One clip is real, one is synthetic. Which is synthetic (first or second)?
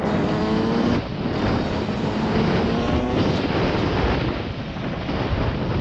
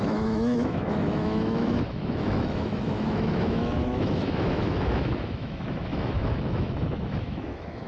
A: second